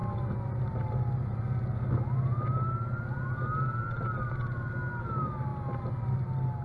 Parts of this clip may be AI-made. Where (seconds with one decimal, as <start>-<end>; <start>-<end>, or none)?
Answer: none